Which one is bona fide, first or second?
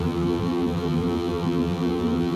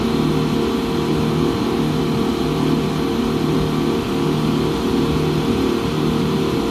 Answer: second